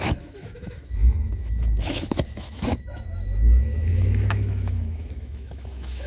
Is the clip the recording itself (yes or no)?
no